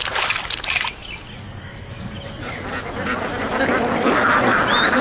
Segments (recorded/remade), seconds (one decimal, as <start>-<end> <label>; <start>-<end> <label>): 0.0-5.0 recorded